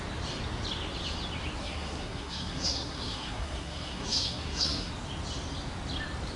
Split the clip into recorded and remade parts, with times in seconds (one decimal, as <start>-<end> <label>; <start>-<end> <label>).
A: 0.0-1.6 recorded; 1.6-4.9 remade; 4.9-6.4 recorded